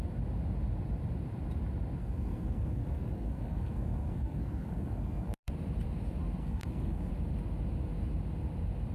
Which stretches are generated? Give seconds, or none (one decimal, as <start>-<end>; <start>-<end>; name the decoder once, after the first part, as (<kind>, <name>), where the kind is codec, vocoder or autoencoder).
2.0-5.5 (codec, SNAC); 6.4-7.1